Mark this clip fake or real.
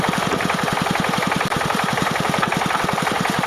fake